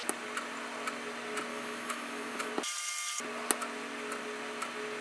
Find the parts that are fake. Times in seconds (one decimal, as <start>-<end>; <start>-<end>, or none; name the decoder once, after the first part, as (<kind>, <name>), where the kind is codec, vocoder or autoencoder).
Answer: 1.5-2.5 (autoencoder, DAC-VAE)